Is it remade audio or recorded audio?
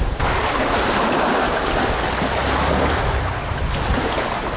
recorded